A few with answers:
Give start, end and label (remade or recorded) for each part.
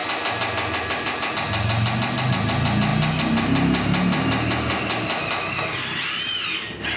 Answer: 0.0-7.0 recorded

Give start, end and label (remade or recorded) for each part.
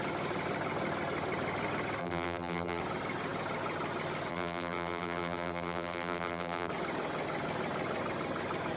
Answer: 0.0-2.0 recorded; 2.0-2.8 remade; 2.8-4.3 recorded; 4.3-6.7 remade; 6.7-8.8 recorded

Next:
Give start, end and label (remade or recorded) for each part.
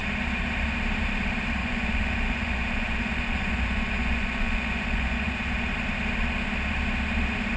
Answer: 0.0-1.6 recorded; 1.6-5.7 remade; 5.7-7.6 recorded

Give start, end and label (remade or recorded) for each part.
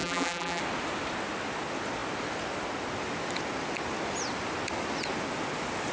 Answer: 0.0-0.6 remade; 0.6-5.9 recorded